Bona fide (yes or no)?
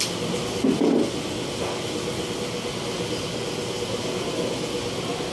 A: yes